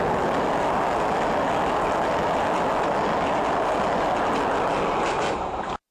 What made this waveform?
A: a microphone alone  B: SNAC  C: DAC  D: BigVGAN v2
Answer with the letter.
A